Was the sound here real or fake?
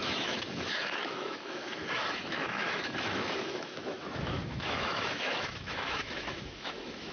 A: fake